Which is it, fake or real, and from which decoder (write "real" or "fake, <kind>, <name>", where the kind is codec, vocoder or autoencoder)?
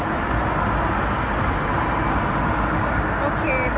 real